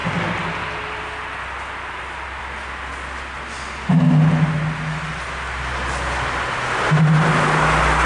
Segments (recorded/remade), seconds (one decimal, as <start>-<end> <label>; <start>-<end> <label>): 0.0-8.1 recorded